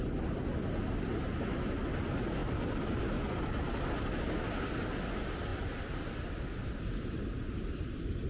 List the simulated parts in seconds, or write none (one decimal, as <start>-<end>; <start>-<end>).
none